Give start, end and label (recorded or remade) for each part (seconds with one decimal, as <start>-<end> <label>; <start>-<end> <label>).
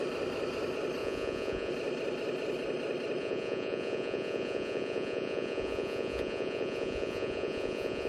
0.0-1.0 recorded; 1.0-1.7 remade; 1.7-3.2 recorded; 3.2-8.1 remade